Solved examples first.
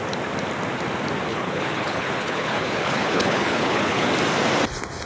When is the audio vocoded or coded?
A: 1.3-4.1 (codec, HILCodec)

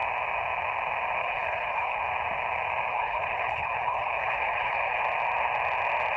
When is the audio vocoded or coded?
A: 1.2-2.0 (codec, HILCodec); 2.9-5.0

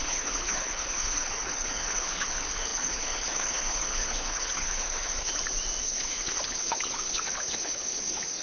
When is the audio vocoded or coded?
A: 0.0-5.3 (codec, HILCodec); 5.8-8.4